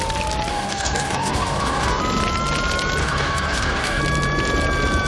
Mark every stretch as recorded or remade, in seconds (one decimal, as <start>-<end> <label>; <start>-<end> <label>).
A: 0.0-0.5 recorded; 0.5-2.0 remade; 2.0-3.0 recorded; 3.0-4.0 remade; 4.0-5.1 recorded